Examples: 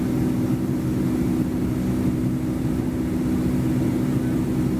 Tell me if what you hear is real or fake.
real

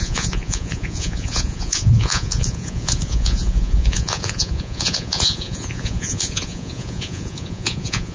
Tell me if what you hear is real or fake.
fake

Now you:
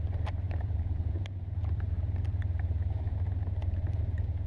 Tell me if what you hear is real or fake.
fake